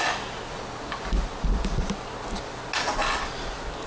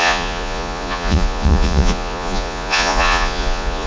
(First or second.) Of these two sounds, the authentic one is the first